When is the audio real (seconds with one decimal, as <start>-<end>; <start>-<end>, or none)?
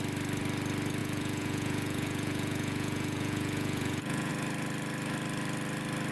0.0-1.0; 4.3-6.1